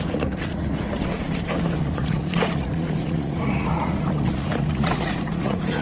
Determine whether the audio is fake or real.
fake